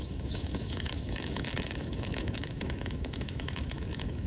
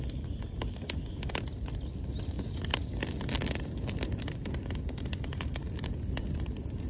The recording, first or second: second